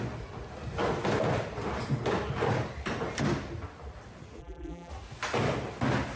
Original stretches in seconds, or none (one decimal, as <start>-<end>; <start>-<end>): 0.0-4.4; 4.9-6.2